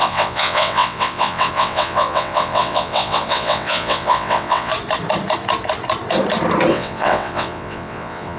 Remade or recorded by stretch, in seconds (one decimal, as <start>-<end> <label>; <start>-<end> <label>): 0.0-4.7 remade; 4.7-6.7 recorded; 6.7-8.4 remade